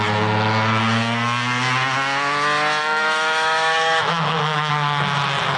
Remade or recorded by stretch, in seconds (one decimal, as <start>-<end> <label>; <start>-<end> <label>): 0.0-2.8 recorded; 2.8-4.7 remade; 4.7-5.6 recorded